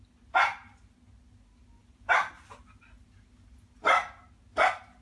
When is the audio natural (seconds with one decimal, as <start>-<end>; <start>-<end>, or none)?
0.0-1.8; 3.5-5.0